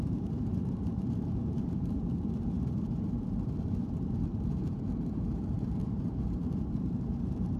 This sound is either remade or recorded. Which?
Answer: remade